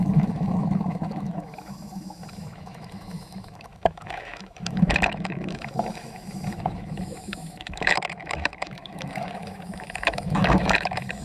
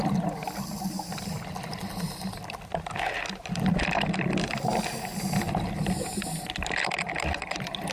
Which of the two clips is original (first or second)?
second